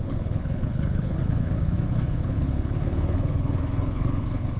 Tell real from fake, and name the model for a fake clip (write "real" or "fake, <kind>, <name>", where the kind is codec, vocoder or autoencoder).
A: fake, codec, HILCodec